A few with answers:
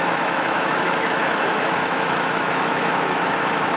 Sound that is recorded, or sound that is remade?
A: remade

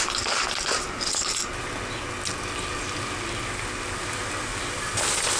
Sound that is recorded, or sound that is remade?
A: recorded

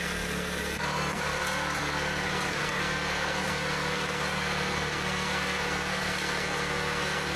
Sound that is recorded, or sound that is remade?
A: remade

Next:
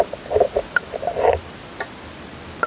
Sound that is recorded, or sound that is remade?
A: recorded